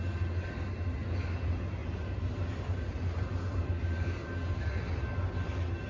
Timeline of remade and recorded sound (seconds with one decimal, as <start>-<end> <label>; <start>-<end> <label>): 0.0-5.9 recorded